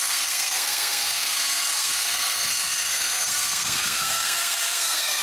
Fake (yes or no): yes